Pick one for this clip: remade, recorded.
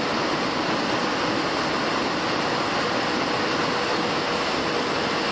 recorded